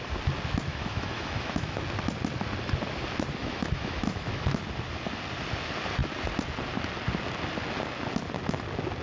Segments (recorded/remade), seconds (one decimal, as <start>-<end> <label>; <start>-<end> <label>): 0.0-0.7 recorded; 0.7-1.8 remade; 1.8-3.4 recorded; 3.4-4.6 remade; 4.6-9.0 recorded

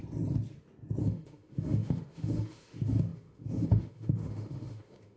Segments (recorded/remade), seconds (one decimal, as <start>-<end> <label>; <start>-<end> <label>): 0.0-1.0 recorded; 1.0-5.2 remade

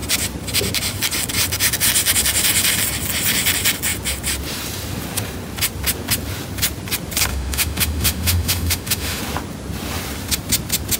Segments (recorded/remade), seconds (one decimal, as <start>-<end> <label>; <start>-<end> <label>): 0.0-7.3 recorded; 7.3-9.2 remade; 9.2-11.0 recorded

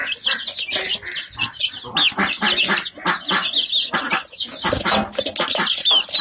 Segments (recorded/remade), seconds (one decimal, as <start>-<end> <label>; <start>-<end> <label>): 0.0-6.2 recorded

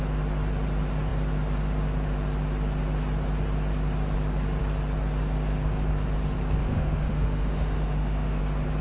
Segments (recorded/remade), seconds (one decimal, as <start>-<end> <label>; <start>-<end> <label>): 0.0-6.6 recorded; 6.6-8.4 remade; 8.4-8.8 recorded

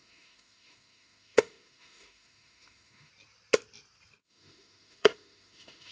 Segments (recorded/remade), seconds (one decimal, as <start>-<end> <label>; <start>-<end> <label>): 0.0-3.1 remade; 3.1-4.2 recorded; 4.2-5.9 remade

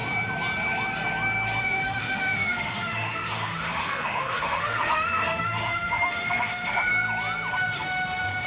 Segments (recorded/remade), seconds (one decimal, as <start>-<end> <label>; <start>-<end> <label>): 0.0-1.6 recorded; 1.6-6.9 remade; 6.9-7.5 recorded; 7.5-8.5 remade